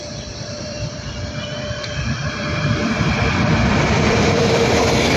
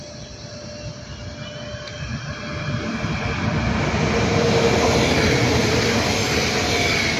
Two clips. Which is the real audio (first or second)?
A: second